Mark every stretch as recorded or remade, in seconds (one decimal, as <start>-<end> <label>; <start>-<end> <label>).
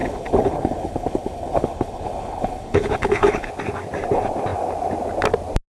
0.0-3.5 remade; 3.5-5.8 recorded